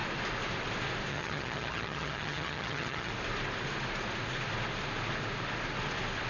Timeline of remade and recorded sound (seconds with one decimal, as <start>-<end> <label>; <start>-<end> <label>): 0.0-1.1 recorded; 1.1-3.1 remade; 3.1-6.3 recorded